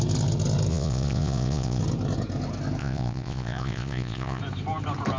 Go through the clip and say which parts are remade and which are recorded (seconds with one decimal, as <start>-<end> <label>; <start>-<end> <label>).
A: 0.0-0.7 recorded; 0.7-1.8 remade; 1.8-2.8 recorded; 2.8-4.4 remade; 4.4-5.2 recorded